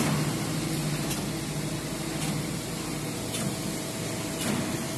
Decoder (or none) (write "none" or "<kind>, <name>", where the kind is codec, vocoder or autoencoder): none